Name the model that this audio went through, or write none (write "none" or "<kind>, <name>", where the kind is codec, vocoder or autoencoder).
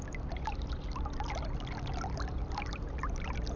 none